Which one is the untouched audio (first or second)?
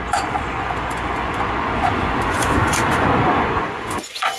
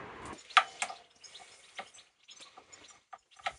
second